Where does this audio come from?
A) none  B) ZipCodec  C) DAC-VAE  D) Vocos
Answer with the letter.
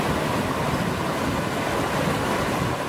A